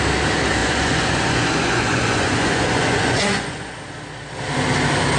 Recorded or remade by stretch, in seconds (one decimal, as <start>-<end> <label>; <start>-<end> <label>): 0.0-0.6 recorded; 0.6-3.7 remade; 3.7-5.2 recorded